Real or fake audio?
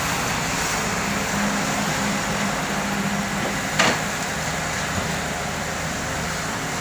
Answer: real